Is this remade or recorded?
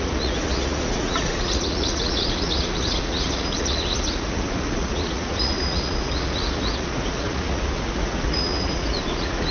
remade